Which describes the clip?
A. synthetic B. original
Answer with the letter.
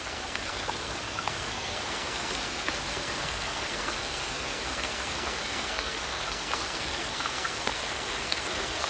A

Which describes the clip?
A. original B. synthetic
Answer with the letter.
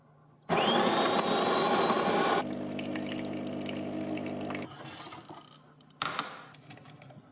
A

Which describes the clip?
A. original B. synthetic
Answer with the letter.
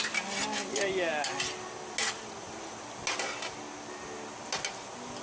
A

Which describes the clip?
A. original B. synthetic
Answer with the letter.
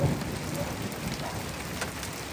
A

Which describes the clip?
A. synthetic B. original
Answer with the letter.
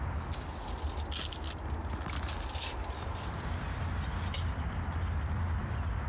B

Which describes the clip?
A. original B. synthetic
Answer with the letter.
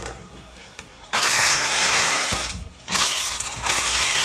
B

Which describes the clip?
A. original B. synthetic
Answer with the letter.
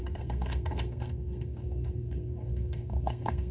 B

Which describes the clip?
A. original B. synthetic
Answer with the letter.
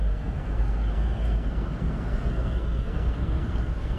B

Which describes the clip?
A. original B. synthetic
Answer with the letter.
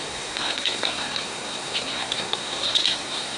B